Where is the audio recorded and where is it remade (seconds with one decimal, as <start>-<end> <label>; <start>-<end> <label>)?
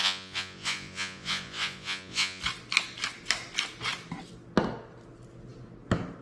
0.0-2.4 remade; 2.4-6.2 recorded